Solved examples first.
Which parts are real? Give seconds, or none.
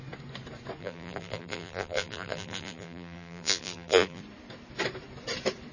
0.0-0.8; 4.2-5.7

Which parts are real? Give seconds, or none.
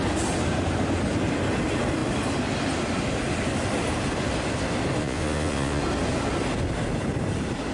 0.0-5.0; 5.8-7.7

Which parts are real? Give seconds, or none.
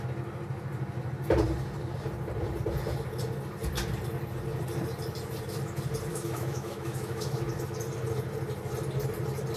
0.0-6.1; 7.5-9.6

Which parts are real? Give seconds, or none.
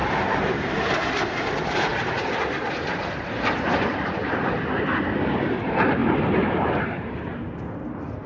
4.6-6.0; 7.5-8.3